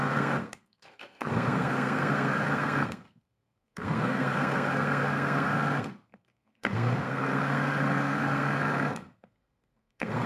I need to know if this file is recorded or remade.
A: remade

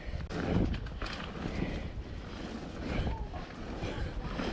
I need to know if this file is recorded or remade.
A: recorded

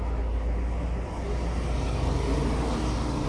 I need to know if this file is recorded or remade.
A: recorded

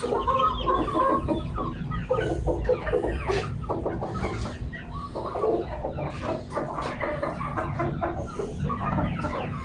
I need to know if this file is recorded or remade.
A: recorded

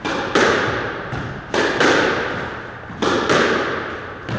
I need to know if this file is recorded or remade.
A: recorded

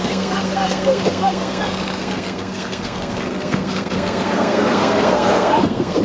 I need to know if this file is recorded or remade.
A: remade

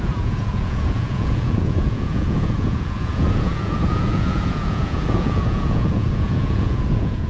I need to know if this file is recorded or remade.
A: remade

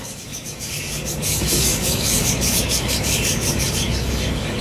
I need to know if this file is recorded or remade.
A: remade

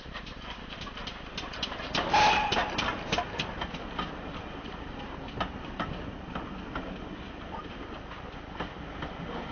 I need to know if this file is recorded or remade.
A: recorded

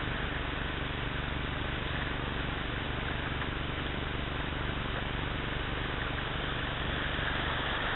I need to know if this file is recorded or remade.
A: recorded